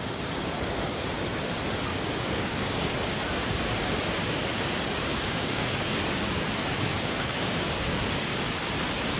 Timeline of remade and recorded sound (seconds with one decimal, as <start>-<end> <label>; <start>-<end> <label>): 0.0-1.9 recorded; 1.9-2.9 remade; 2.9-5.1 recorded; 5.1-5.9 remade; 5.9-6.9 recorded; 6.9-7.5 remade; 7.5-9.2 recorded